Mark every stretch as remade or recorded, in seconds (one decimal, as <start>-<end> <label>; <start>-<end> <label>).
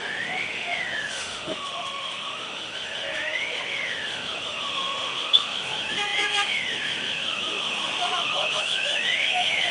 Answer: 0.0-9.7 remade